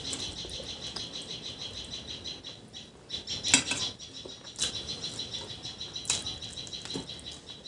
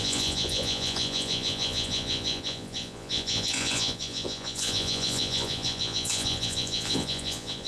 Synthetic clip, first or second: second